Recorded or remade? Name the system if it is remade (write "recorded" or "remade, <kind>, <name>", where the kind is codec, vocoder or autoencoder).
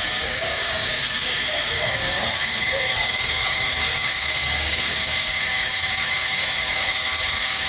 remade, codec, DAC